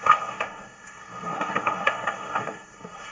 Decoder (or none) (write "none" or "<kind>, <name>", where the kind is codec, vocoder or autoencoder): codec, SNAC